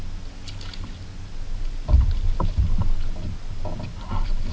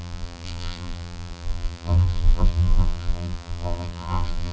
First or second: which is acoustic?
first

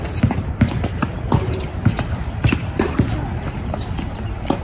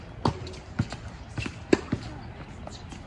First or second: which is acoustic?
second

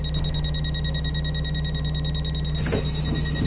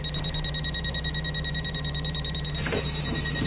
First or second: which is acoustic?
first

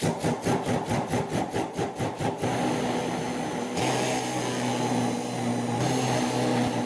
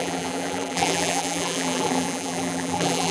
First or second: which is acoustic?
first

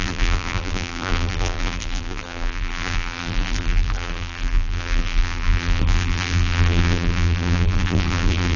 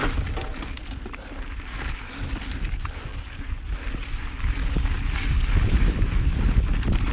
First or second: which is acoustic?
second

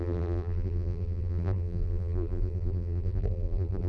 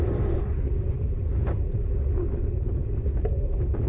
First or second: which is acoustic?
second